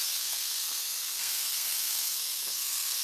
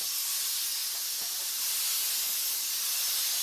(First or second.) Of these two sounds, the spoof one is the first